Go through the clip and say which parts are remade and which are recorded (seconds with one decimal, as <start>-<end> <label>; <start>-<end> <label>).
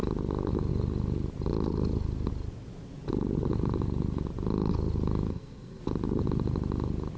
0.0-5.3 recorded; 5.3-5.8 remade; 5.8-7.2 recorded